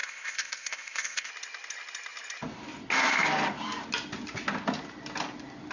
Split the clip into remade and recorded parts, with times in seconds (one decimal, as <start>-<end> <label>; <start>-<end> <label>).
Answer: 0.0-1.3 remade; 1.3-5.7 recorded